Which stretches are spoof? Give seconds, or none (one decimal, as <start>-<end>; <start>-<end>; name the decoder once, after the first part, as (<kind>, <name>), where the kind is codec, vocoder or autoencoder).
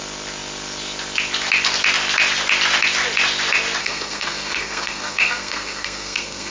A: 3.8-6.5 (codec, SNAC)